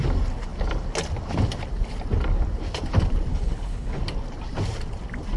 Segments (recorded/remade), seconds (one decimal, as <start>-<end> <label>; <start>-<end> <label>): 0.0-3.3 recorded; 3.3-4.0 remade; 4.0-5.4 recorded